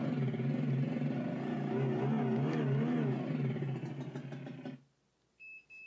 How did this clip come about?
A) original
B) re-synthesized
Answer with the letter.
A